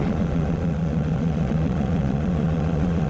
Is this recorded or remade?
remade